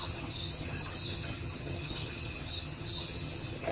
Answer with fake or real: fake